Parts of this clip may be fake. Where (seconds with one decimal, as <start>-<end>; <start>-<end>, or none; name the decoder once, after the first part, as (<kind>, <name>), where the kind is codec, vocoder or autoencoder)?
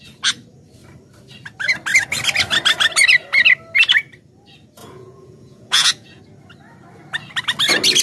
4.8-6.2 (vocoder, Vocos)